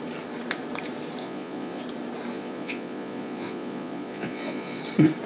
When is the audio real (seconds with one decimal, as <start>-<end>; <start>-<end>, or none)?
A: 0.0-1.2; 1.8-2.3; 4.8-5.3